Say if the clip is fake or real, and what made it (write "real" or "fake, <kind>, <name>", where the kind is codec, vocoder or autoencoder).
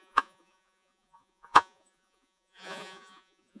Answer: fake, vocoder, Vocos